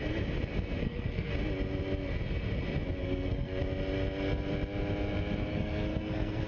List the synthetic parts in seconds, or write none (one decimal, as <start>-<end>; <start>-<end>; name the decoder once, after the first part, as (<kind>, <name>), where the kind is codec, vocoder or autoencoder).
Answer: 0.8-1.3 (codec, SNAC); 3.0-3.6; 5.5-6.5